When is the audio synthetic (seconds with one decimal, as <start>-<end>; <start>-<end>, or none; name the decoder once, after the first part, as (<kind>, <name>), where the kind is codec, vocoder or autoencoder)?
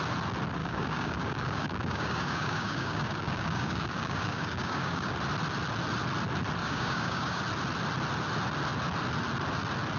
0.6-5.1 (codec, DAC); 6.6-7.4